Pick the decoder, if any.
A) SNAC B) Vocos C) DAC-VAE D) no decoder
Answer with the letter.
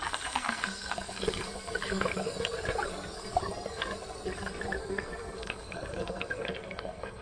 A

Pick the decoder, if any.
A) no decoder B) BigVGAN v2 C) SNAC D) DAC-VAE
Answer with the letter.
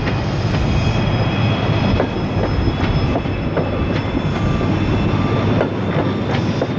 A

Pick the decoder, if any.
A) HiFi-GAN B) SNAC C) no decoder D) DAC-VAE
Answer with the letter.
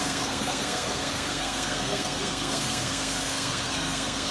B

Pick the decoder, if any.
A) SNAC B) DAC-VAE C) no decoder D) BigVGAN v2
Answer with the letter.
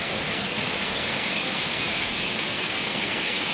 A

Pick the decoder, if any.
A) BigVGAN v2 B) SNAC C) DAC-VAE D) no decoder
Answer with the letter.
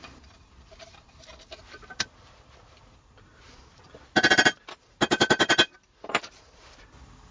D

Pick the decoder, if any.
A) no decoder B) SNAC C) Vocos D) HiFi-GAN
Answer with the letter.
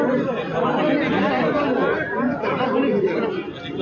A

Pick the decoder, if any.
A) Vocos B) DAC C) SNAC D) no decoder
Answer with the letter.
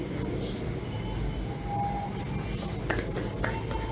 D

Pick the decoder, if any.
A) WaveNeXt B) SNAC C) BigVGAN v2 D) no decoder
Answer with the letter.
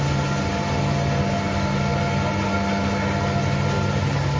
D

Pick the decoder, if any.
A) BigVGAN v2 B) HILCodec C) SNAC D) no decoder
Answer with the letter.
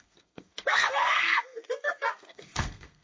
C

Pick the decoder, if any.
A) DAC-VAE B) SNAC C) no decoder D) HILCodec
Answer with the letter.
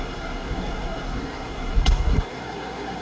B